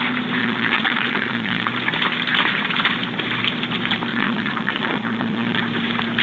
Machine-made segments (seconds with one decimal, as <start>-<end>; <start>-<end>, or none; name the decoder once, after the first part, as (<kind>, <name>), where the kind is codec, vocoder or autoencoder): 0.4-1.7 (vocoder, Vocos); 4.1-5.6